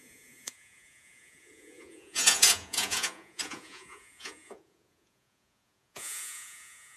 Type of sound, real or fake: fake